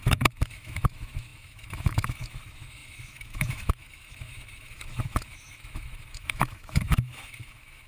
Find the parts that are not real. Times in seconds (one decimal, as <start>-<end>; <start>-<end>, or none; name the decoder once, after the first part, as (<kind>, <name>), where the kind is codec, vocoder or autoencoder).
0.0-7.9 (autoencoder, DAC-VAE)